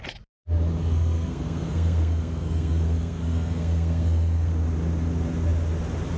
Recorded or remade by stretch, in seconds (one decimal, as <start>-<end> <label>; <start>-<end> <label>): 0.0-0.8 recorded; 0.8-4.5 remade; 4.5-6.2 recorded